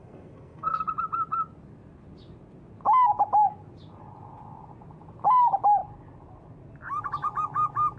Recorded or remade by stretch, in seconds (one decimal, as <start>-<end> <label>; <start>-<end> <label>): 0.0-0.8 remade; 0.8-8.0 recorded